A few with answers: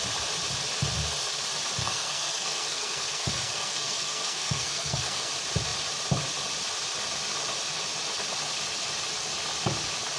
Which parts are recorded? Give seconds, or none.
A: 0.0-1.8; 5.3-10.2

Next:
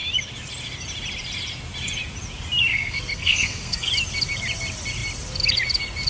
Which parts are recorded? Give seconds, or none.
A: 0.0-2.7; 3.9-6.1

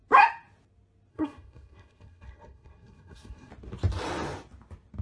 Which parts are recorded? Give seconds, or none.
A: 0.0-1.1; 3.5-5.0

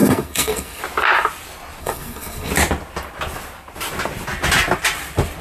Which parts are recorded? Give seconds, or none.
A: 0.8-1.8; 2.5-5.4